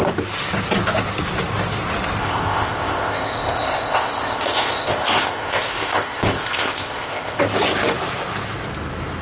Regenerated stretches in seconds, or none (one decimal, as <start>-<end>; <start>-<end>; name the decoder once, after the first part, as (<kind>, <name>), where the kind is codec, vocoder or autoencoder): 2.2-7.4 (codec, ZipCodec)